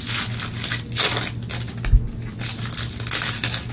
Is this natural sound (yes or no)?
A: yes